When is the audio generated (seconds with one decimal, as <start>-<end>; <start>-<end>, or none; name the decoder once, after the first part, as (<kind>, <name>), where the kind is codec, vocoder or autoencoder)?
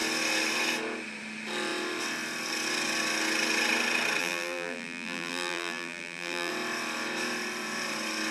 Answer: 4.2-6.5 (vocoder, BigVGAN v2)